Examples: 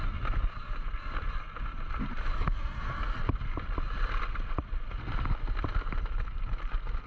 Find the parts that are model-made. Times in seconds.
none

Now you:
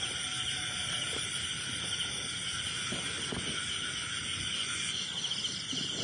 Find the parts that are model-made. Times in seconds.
4.3-5.0

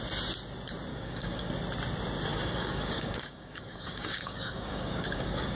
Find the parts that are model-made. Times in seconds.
0.9-1.5; 2.3-5.6

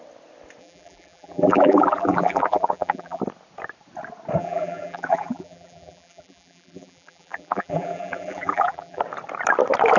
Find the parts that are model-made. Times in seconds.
0.6-3.2; 4.4-9.0